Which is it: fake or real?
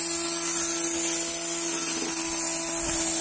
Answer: real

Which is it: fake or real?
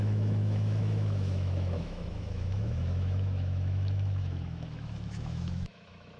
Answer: fake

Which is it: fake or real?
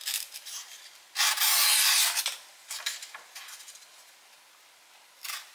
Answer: real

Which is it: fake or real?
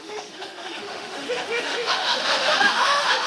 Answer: fake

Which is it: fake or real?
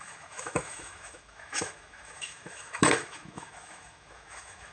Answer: fake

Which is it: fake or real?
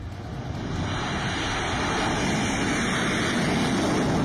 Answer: real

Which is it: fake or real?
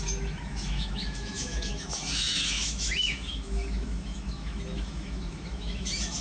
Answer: fake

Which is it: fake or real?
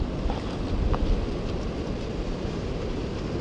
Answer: real